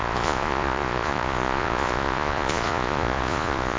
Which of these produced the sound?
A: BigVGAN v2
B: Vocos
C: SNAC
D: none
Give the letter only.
B